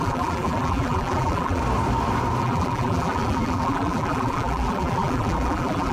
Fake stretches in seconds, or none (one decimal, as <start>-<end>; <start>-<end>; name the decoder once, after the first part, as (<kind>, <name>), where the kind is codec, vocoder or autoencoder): 0.0-1.6 (vocoder, BigVGAN v2); 2.4-5.9